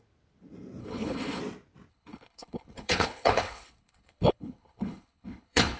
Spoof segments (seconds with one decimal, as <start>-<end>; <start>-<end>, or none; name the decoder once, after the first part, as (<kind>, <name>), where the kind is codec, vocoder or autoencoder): 0.8-1.4 (codec, HILCodec); 1.9-5.8